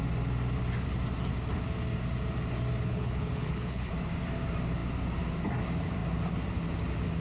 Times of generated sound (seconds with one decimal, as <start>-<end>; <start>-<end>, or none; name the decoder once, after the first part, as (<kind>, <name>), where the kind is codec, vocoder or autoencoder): 2.9-3.9 (codec, HILCodec)